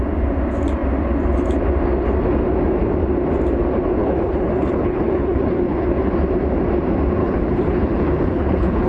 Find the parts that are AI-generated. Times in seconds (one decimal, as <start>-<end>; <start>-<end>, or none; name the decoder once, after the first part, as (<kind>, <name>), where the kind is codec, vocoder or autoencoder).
4.0-6.1 (codec, HILCodec); 7.2-8.9